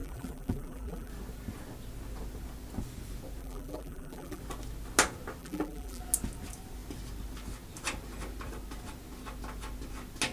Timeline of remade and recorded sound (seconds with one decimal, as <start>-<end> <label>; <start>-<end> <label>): 0.0-1.1 remade; 1.1-3.4 recorded; 3.4-4.4 remade; 4.4-5.4 recorded; 5.4-6.0 remade; 6.0-10.3 recorded